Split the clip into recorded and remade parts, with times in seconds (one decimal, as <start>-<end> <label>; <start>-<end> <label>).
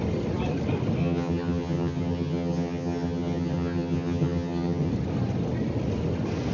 0.0-1.0 recorded; 1.0-4.9 remade; 4.9-6.5 recorded